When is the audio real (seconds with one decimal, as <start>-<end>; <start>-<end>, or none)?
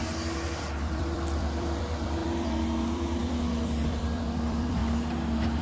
4.8-5.6